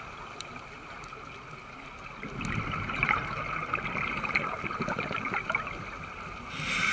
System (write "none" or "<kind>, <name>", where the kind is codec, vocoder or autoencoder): none